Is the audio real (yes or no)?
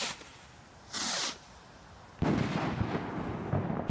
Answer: yes